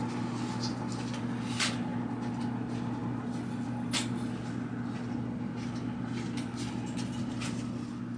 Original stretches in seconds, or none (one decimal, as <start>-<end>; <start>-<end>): 0.0-8.2

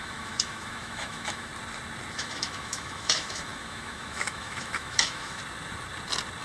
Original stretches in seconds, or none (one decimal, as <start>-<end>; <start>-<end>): 1.5-2.1; 5.4-6.4

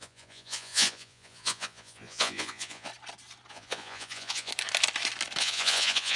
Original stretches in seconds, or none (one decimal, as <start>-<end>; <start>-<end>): 2.9-3.5; 4.5-5.4

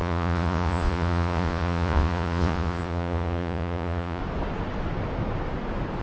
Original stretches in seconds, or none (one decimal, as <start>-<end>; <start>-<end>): 4.2-6.0

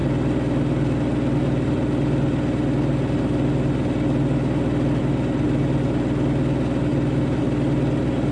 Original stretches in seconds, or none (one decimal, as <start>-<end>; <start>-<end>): 0.0-8.3

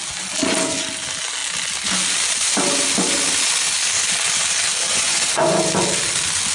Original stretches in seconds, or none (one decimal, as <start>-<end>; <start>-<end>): 0.0-4.9; 5.6-6.5

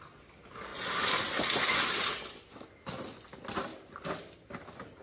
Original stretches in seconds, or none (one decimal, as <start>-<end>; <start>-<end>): 0.0-5.0